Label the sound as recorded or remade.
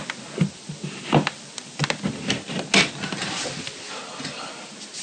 recorded